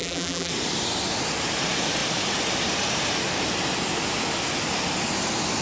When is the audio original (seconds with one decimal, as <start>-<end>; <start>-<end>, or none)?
0.5-5.6